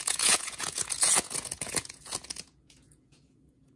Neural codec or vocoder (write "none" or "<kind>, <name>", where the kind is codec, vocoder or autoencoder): vocoder, Vocos